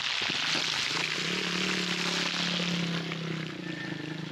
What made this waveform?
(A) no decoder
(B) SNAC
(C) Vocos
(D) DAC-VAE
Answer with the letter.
A